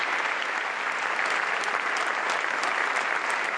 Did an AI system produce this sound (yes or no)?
no